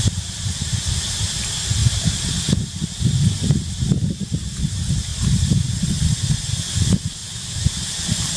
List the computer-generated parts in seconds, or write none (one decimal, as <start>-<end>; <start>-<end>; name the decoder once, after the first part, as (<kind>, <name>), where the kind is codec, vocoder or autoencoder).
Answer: 1.8-2.5 (vocoder, BigVGAN v2); 5.1-5.7